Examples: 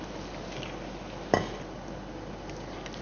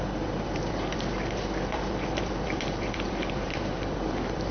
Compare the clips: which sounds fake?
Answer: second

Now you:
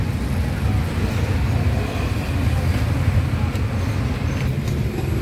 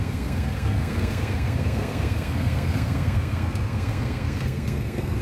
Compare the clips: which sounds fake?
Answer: second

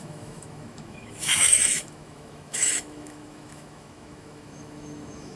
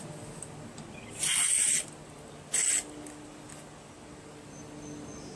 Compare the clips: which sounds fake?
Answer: first